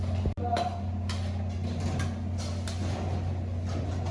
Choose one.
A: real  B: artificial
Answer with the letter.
A